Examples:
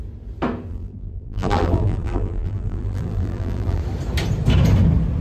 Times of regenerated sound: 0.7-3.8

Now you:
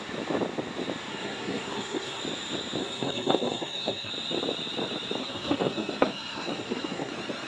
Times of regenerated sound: 1.1-2.2; 2.8-4.1; 5.2-7.1

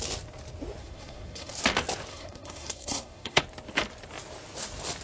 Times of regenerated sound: 0.8-1.5; 2.1-3.4

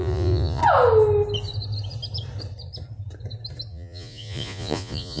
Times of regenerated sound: 0.0-0.6; 3.7-5.2

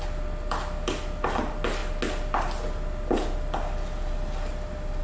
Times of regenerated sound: none

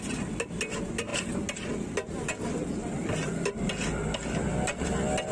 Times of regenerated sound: none

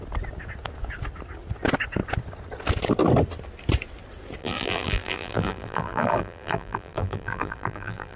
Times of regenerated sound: 4.4-8.2